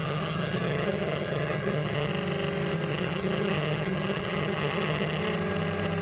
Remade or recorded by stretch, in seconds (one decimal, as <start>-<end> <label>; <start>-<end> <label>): 0.0-2.1 remade; 2.1-2.9 recorded; 2.9-5.2 remade; 5.2-6.0 recorded